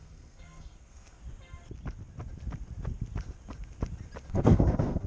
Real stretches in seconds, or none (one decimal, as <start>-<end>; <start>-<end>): 1.2-4.3